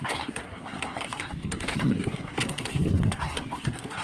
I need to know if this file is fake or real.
fake